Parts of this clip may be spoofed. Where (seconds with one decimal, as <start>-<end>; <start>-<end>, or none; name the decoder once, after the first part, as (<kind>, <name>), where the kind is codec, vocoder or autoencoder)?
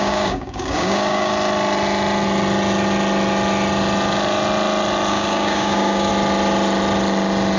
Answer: 0.0-1.3 (codec, DAC); 5.1-6.1